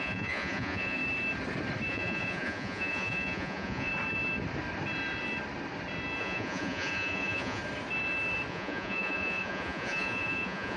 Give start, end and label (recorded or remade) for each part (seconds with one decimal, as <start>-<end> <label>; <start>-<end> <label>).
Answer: 0.0-1.0 remade; 1.0-1.9 recorded; 1.9-3.9 remade; 3.9-6.2 recorded; 6.2-7.6 remade; 7.6-8.5 recorded; 8.5-10.8 remade